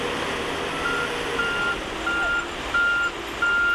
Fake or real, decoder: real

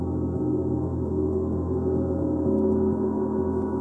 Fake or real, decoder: fake, autoencoder, DAC-VAE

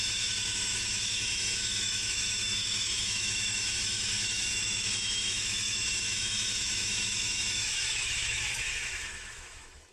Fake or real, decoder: fake, autoencoder, DAC-VAE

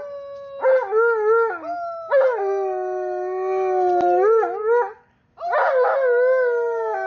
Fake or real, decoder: real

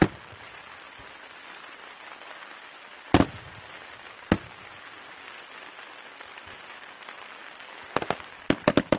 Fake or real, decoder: real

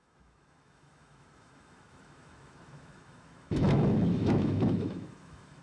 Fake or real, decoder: fake, autoencoder, DAC-VAE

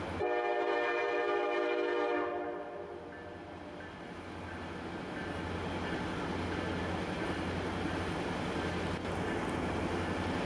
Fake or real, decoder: real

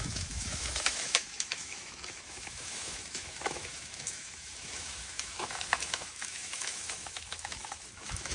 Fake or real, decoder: fake, autoencoder, DAC-VAE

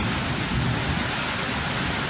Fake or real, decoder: real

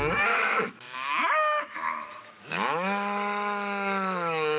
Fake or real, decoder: fake, autoencoder, DAC-VAE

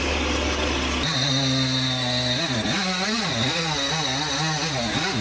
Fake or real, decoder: real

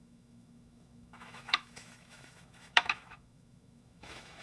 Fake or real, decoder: fake, autoencoder, DAC-VAE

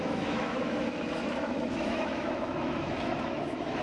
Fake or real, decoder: fake, autoencoder, DAC-VAE